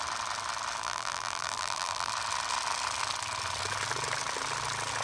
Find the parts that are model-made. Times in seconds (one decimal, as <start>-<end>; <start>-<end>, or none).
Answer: 0.8-2.1